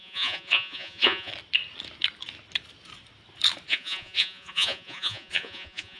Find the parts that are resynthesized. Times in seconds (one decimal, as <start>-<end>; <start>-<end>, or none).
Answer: 0.0-1.3; 3.7-6.0